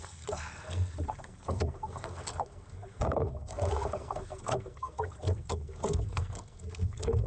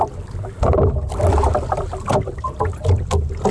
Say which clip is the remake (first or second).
first